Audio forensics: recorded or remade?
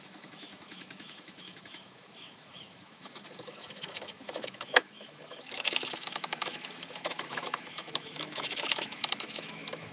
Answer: remade